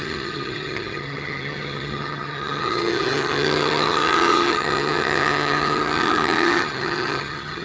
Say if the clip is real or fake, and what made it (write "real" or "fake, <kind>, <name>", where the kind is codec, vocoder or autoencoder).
fake, vocoder, HiFi-GAN